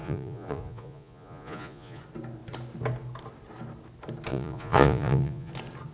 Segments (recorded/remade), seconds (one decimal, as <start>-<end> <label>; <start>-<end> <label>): 0.0-2.0 remade; 2.0-4.3 recorded; 4.3-5.5 remade; 5.5-5.9 recorded